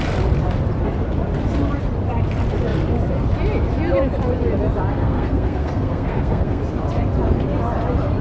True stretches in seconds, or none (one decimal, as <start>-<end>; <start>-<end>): 0.0-4.9; 6.6-8.2